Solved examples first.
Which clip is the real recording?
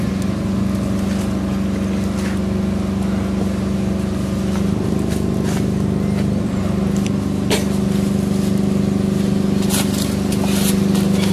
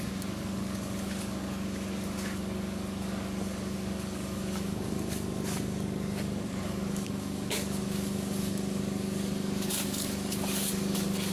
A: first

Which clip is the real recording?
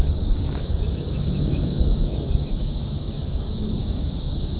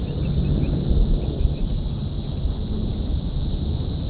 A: second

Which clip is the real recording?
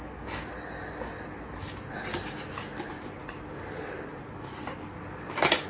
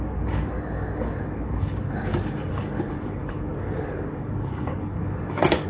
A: first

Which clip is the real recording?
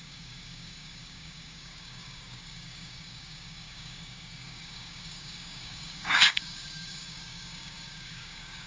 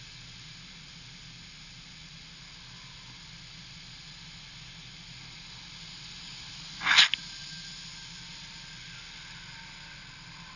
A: second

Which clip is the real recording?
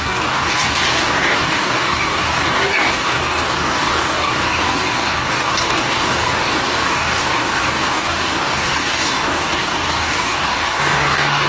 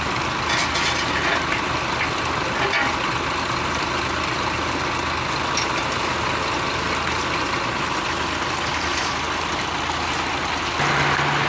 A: second